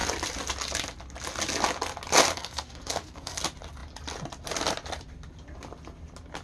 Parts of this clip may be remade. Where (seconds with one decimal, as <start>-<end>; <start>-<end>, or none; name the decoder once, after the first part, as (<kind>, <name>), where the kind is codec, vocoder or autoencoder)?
2.3-3.4 (codec, SNAC)